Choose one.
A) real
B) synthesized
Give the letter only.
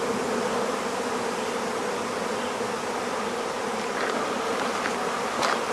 A